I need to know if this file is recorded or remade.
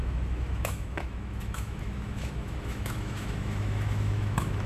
remade